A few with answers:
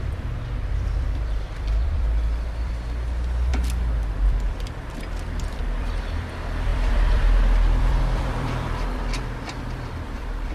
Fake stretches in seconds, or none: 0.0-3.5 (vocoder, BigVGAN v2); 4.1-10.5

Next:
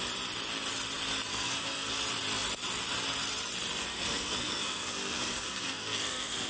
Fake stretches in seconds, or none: 1.3-1.9 (codec, SNAC); 3.9-6.5

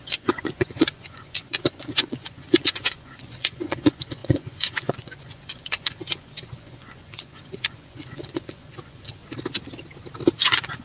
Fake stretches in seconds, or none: 0.0-9.2 (vocoder, Vocos); 10.4-10.8

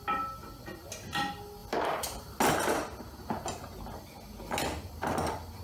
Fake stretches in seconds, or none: 1.6-2.4 (vocoder, BigVGAN v2)

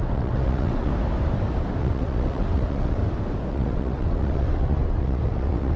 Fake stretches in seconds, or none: 0.0-0.9 (vocoder, WaveNeXt); 1.8-3.0; 3.5-5.8